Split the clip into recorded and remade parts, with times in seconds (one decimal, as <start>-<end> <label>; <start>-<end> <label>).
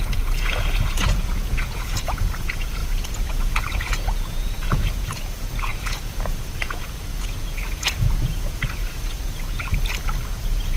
0.0-9.7 remade; 9.7-10.3 recorded; 10.3-10.8 remade